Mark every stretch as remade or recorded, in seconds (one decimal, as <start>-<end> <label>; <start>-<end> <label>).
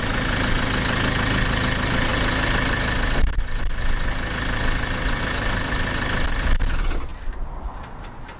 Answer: 0.0-8.4 recorded